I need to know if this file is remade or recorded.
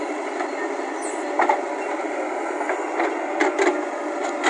recorded